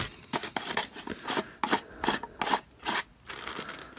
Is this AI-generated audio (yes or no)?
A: no